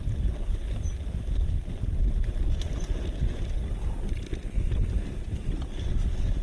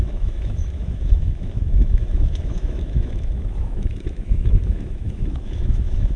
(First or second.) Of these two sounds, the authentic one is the first